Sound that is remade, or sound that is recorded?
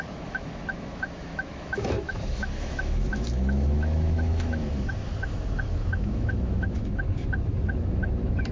remade